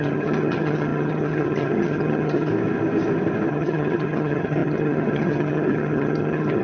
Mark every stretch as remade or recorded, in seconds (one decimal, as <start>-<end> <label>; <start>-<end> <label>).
0.0-2.5 remade; 2.5-3.5 recorded; 3.5-6.6 remade